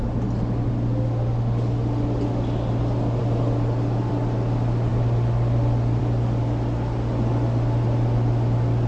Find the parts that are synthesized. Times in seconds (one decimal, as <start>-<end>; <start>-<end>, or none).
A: none